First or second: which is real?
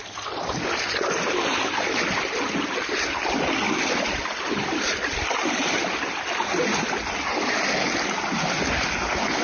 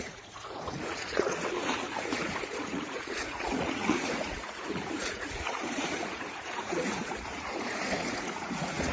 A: first